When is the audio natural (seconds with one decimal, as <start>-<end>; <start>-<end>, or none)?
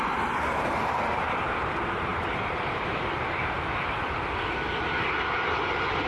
0.0-2.1; 4.8-6.1